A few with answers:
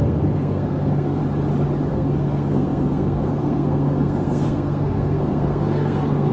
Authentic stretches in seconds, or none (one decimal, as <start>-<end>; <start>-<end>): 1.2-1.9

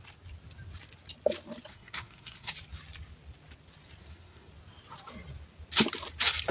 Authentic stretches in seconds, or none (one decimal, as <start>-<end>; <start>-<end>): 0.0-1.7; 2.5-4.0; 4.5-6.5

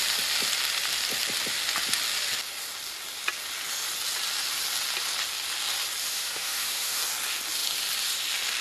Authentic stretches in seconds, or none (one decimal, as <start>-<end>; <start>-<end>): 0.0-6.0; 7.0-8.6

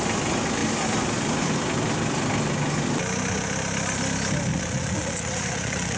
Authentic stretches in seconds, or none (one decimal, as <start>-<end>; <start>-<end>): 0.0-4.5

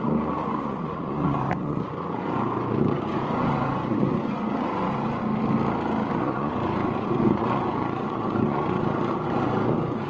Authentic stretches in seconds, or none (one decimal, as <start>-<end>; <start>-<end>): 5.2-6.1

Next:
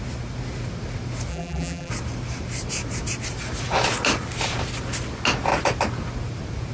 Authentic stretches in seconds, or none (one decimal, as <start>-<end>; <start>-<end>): 0.0-1.3; 1.9-6.7

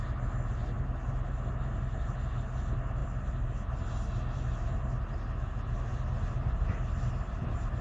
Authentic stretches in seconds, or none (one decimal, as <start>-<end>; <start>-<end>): 0.0-7.8

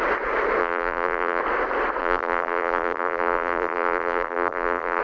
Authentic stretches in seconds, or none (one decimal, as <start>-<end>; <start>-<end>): 0.0-0.6; 1.4-2.0